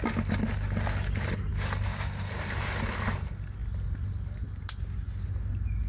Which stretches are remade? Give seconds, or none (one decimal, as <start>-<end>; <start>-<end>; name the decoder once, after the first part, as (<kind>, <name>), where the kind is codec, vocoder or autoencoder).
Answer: none